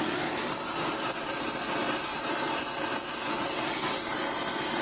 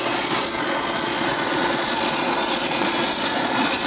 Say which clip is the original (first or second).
first